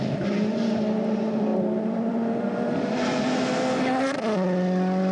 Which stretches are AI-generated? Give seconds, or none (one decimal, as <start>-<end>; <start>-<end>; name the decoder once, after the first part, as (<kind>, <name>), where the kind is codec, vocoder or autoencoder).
none